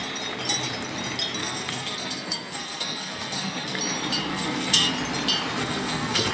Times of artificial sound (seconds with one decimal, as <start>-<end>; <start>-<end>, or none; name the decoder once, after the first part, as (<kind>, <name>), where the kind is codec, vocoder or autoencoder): 1.4-3.8 (codec, SNAC); 4.3-4.9; 5.6-6.3